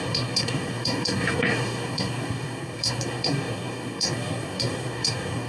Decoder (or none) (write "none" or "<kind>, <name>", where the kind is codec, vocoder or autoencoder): codec, SNAC